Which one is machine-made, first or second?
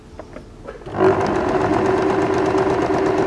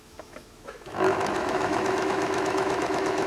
second